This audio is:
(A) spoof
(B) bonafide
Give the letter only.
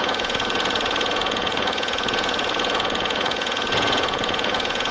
A